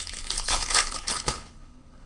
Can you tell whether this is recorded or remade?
remade